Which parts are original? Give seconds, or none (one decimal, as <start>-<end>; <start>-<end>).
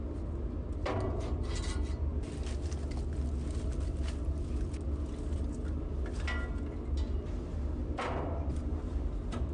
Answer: 0.0-9.5